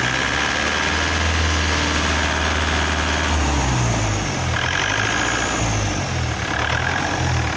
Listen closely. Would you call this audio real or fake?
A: real